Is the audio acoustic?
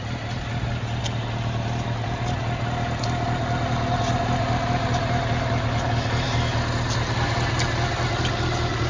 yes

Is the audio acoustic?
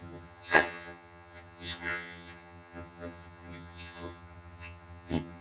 no